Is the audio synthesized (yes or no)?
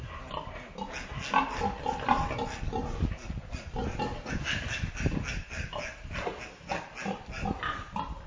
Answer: no